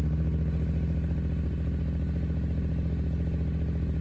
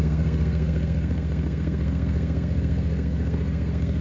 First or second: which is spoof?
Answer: second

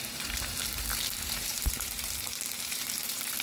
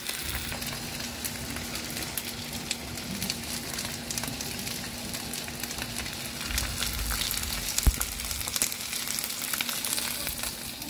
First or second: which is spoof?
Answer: first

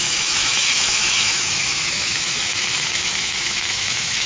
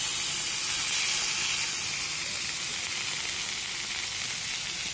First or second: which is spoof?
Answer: first